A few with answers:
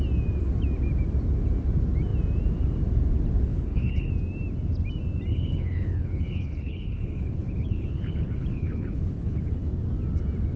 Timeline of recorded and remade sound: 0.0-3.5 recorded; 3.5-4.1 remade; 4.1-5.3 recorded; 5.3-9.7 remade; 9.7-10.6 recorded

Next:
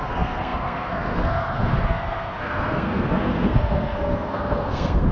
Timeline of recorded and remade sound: 0.0-5.1 remade

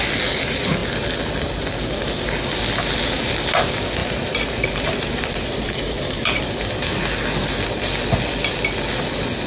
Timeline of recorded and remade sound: 0.0-4.0 recorded; 4.0-6.5 remade; 6.5-9.5 recorded

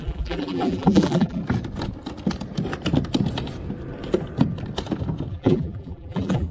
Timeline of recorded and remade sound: 0.0-1.4 remade; 1.4-5.3 recorded; 5.3-6.5 remade